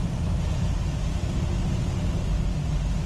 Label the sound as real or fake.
real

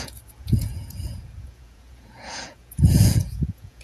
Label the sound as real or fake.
fake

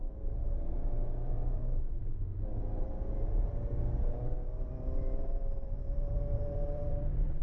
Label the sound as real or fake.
fake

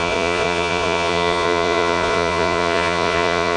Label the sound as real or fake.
fake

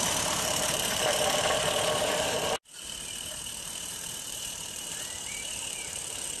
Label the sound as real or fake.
fake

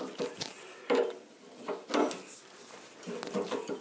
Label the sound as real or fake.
real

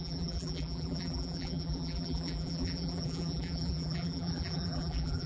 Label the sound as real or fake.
fake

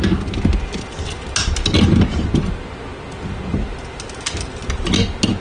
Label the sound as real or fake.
real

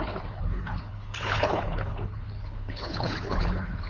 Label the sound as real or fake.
fake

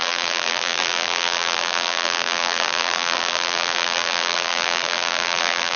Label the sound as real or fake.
fake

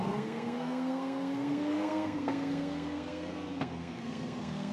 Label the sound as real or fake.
fake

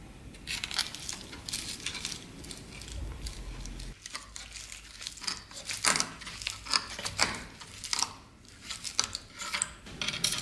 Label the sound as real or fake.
real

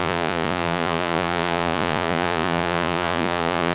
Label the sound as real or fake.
fake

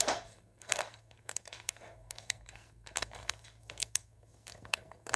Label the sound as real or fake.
fake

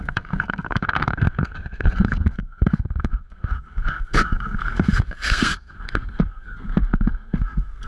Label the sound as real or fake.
fake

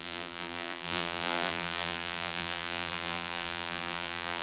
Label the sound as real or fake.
fake